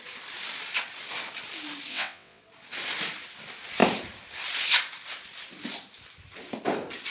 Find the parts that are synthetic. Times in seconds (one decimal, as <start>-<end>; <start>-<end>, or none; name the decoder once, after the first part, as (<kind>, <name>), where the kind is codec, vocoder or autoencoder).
1.9-2.4 (vocoder, WaveNeXt)